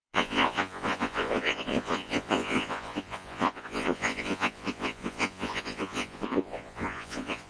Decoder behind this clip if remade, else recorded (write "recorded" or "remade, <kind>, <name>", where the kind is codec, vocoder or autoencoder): remade, vocoder, Vocos